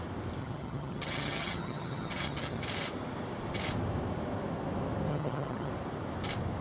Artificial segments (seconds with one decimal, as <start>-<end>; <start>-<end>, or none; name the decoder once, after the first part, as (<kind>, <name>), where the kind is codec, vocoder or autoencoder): 0.4-2.6 (vocoder, HiFi-GAN); 5.1-5.7